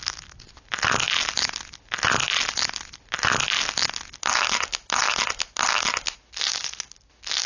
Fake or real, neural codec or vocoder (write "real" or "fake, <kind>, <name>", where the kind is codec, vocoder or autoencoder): real